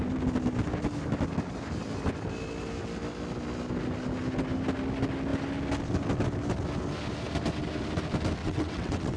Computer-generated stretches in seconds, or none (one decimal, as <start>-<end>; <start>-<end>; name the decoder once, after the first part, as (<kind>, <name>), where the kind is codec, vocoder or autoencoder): 8.4-9.2 (vocoder, WaveNeXt)